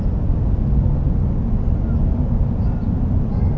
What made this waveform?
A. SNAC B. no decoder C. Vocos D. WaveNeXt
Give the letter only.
B